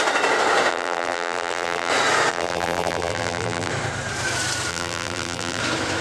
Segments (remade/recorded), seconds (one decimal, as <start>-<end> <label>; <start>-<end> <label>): 0.0-0.7 recorded; 0.7-1.9 remade; 1.9-2.3 recorded; 2.3-3.7 remade; 3.7-4.7 recorded; 4.7-5.6 remade; 5.6-6.0 recorded